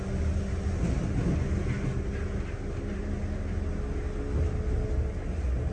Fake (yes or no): no